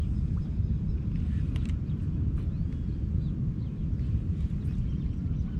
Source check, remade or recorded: recorded